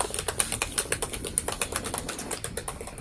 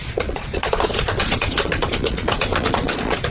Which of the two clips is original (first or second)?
first